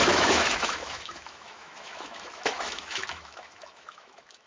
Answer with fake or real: fake